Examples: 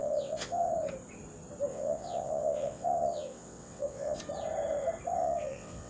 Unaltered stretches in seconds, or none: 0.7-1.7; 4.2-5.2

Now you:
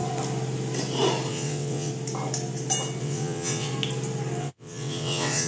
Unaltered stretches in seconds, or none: 0.0-1.3; 1.9-3.0; 3.7-4.4

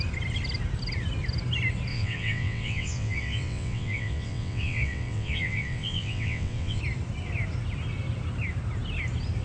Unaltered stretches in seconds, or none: 0.0-1.9; 6.8-9.4

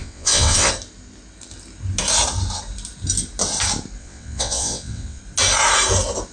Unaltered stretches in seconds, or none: 0.7-4.0; 5.2-6.3

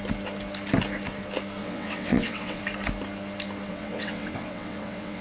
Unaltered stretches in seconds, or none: 0.0-1.6; 2.6-3.7

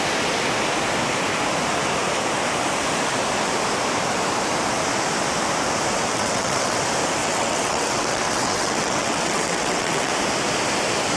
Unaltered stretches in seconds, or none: 0.0-6.1; 6.8-7.2; 10.1-11.2

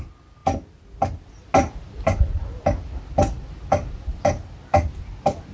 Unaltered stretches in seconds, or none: 0.0-5.5

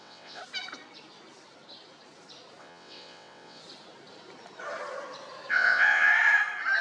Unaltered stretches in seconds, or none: 0.4-2.6; 3.6-5.5; 6.1-6.8